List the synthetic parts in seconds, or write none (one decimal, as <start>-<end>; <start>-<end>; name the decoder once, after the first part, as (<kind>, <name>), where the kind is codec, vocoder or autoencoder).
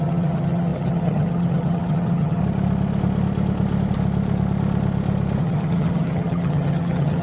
0.0-2.4 (vocoder, HiFi-GAN); 5.4-7.2